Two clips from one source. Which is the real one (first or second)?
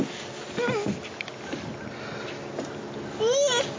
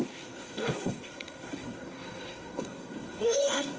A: first